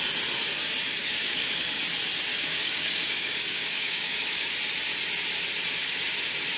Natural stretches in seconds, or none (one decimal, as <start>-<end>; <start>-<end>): 0.0-1.0; 1.8-2.3; 4.5-6.6